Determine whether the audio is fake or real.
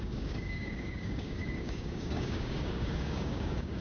fake